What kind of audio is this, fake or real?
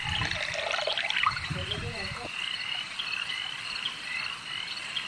real